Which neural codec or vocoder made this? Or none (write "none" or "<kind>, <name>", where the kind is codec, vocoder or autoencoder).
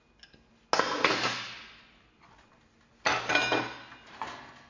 none